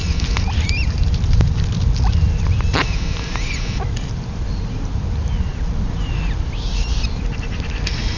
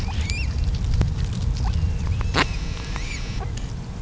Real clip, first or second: second